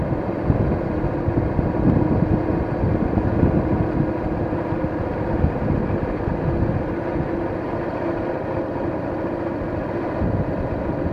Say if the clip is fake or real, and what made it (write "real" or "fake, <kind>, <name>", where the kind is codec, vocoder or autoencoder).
real